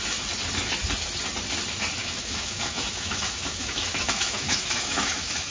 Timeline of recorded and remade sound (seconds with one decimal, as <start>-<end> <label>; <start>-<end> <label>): 0.0-2.0 recorded; 2.0-5.5 remade